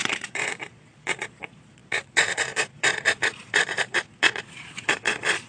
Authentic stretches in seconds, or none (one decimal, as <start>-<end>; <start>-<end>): none